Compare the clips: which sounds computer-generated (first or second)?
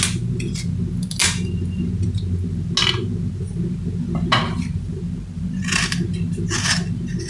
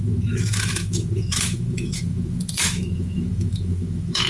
second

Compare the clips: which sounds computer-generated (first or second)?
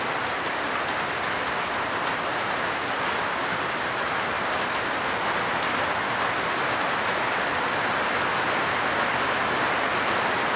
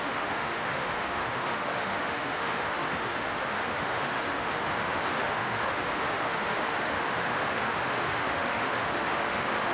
second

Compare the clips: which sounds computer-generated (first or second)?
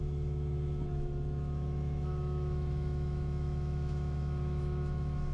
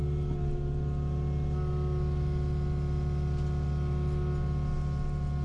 first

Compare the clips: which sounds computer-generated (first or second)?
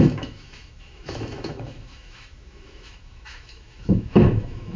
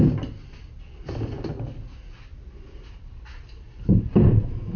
first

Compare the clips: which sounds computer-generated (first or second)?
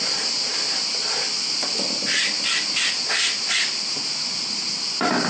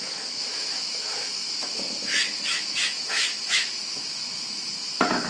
second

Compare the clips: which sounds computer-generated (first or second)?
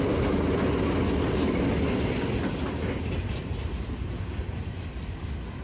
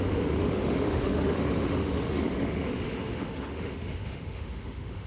second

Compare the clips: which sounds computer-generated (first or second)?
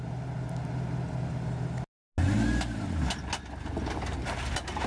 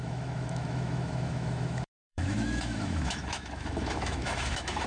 second